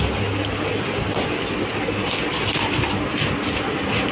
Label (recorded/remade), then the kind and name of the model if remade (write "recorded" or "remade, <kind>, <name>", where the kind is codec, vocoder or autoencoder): recorded